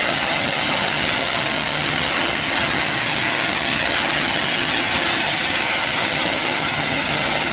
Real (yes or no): no